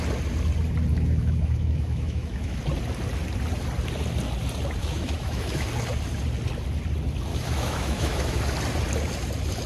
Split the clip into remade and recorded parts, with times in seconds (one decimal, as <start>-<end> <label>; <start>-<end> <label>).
0.0-0.9 recorded; 0.9-2.6 remade; 2.6-4.8 recorded; 4.8-5.7 remade; 5.7-7.3 recorded; 7.3-8.4 remade; 8.4-9.7 recorded